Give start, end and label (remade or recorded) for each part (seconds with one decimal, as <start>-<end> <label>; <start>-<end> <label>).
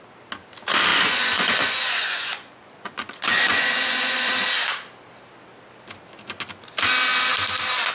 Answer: 0.0-0.9 recorded; 0.9-4.3 remade; 4.3-7.9 recorded